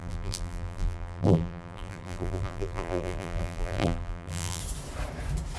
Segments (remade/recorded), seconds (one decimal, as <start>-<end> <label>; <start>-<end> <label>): 0.0-4.6 remade; 4.6-5.6 recorded